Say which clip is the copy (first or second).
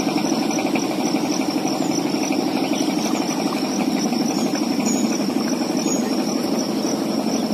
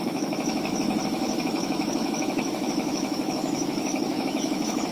second